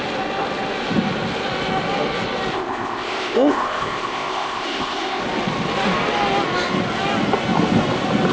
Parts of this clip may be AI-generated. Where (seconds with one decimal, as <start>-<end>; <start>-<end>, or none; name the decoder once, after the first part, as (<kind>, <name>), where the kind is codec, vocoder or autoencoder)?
2.5-5.2 (codec, ZipCodec)